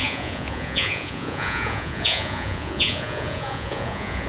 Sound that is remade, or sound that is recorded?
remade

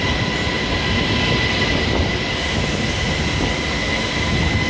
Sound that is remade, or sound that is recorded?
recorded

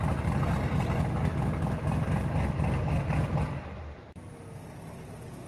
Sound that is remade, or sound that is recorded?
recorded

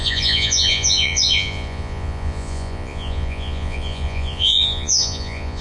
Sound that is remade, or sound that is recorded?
remade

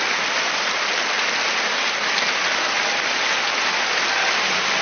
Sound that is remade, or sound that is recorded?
recorded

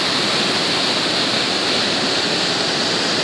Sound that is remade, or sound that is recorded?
recorded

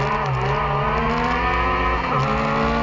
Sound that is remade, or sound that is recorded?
recorded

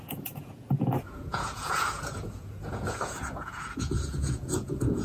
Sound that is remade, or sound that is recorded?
remade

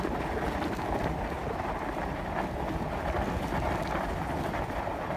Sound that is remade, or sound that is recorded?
recorded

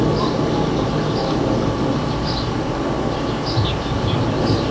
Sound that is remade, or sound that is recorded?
recorded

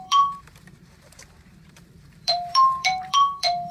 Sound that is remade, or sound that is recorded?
remade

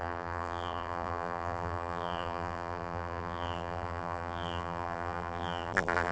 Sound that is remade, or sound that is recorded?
remade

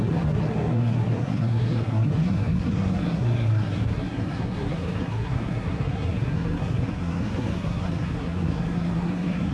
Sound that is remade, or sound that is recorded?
remade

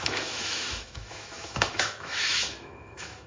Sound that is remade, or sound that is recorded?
remade